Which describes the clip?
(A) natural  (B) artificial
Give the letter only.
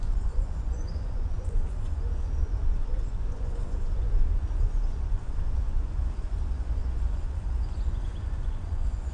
B